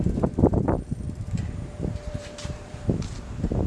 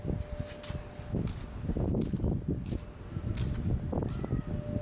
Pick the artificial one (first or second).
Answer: first